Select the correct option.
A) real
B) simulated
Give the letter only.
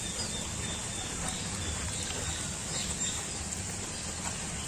A